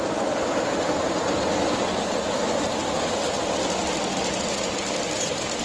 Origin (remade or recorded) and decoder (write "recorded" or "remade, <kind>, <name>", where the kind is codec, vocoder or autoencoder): recorded